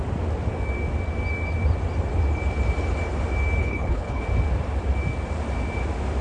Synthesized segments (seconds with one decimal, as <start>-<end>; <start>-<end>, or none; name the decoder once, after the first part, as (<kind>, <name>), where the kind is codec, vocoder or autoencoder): 3.6-4.2 (codec, HILCodec)